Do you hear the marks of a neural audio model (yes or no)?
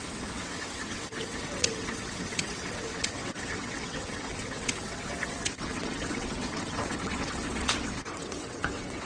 yes